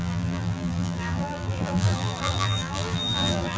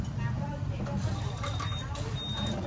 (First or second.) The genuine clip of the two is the second